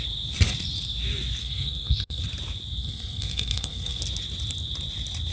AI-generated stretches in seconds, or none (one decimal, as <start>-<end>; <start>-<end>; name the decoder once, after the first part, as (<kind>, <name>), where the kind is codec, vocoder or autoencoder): 1.4-2.2 (codec, SNAC); 2.8-4.0

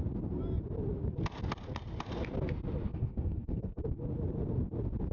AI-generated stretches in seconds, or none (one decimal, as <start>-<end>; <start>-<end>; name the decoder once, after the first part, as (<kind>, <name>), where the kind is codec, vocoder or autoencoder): 2.9-3.8 (codec, SNAC)

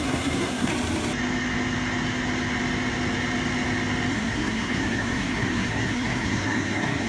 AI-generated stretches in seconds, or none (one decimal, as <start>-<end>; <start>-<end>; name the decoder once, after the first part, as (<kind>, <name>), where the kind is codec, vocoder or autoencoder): 0.0-0.7 (codec, SNAC); 4.1-7.1

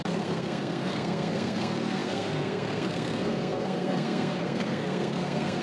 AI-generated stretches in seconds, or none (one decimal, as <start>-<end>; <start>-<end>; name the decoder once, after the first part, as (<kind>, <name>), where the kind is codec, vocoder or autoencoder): 0.0-5.6 (codec, SNAC)